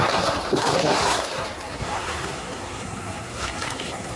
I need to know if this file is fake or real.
fake